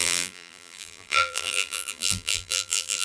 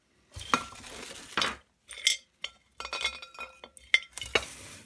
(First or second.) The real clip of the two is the second